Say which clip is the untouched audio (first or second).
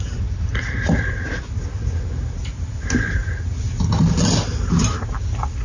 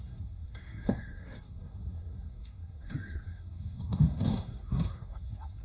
first